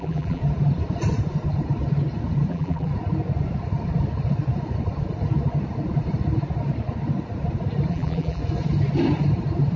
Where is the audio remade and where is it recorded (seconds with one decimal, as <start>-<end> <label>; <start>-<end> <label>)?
0.0-0.4 remade; 0.4-2.5 recorded; 2.5-2.9 remade; 2.9-7.9 recorded; 7.9-8.4 remade; 8.4-9.8 recorded